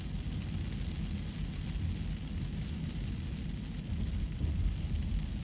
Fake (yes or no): no